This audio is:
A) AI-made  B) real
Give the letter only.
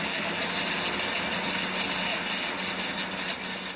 B